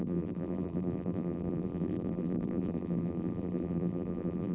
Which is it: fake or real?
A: fake